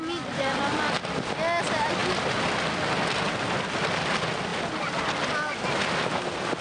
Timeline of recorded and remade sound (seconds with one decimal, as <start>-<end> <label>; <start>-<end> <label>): 0.0-6.6 recorded